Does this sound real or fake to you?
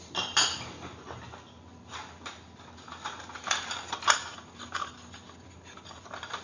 real